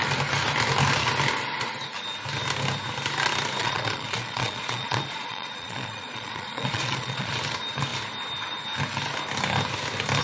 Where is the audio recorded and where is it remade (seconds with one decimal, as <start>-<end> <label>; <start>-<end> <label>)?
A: 0.0-3.6 recorded; 3.6-7.3 remade; 7.3-10.2 recorded